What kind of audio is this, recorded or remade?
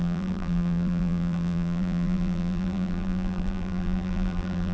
remade